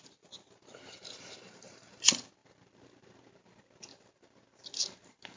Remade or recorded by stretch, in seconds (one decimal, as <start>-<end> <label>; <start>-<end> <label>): 0.0-5.4 recorded